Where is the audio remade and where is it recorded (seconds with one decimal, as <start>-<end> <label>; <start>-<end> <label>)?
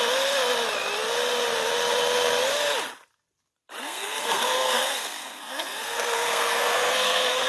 0.0-3.8 recorded; 3.8-7.5 remade